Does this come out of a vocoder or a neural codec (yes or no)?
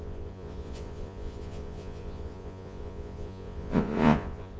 yes